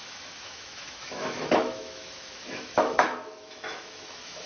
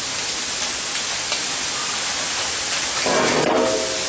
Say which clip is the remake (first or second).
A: first